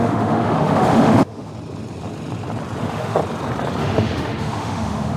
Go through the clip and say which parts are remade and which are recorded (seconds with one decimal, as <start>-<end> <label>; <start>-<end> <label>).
0.0-1.5 remade; 1.5-2.8 recorded; 2.8-3.2 remade; 3.2-3.8 recorded; 3.8-5.2 remade